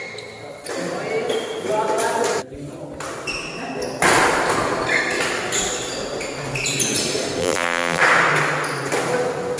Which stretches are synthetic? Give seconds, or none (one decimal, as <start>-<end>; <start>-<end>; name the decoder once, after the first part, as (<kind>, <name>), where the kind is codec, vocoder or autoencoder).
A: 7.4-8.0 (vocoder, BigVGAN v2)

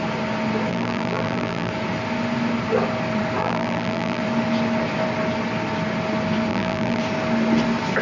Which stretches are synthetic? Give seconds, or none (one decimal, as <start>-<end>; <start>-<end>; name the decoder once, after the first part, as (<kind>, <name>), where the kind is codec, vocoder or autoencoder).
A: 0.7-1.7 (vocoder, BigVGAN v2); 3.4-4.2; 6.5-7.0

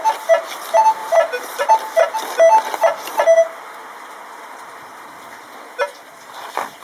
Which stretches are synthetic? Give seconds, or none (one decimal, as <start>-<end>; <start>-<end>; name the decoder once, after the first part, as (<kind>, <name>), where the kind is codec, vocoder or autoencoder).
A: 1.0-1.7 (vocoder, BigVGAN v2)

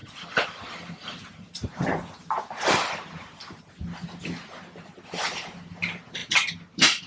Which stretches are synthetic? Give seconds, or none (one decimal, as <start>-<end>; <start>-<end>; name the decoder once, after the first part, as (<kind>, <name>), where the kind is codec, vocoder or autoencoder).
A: 0.0-3.6 (vocoder, BigVGAN v2); 6.2-7.1

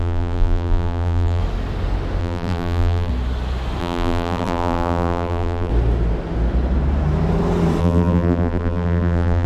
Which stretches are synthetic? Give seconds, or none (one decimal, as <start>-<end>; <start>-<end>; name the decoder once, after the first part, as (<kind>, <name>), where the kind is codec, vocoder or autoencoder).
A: 0.0-1.4 (vocoder, BigVGAN v2); 2.2-3.1; 3.8-5.7; 7.8-9.5